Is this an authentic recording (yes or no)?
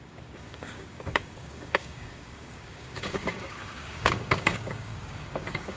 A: no